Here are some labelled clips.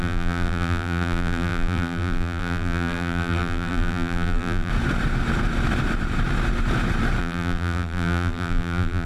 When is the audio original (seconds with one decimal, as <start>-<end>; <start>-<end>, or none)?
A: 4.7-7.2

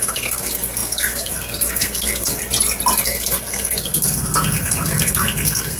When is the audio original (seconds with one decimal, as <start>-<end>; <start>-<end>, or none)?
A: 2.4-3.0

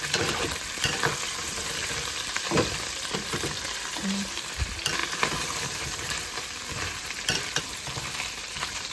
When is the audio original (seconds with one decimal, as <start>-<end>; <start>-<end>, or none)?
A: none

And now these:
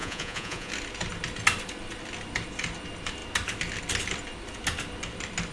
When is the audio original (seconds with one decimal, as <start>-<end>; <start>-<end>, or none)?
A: 0.7-5.5

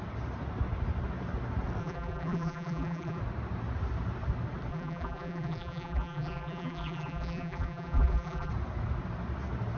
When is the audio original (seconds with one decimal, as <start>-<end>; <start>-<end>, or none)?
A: 0.0-1.8; 3.2-4.7; 8.5-9.8